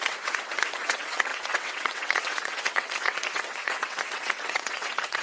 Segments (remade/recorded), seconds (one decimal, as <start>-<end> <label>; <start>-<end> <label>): 0.0-5.2 remade